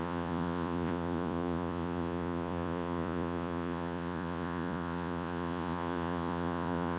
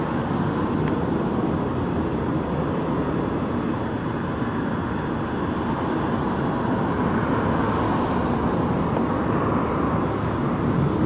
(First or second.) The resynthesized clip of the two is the first